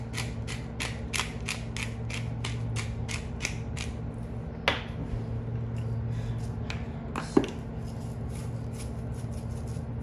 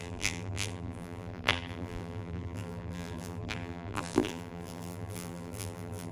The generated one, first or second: second